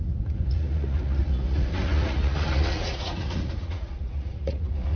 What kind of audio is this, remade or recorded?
remade